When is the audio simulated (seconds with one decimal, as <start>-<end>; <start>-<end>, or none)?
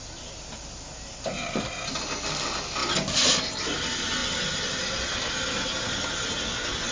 none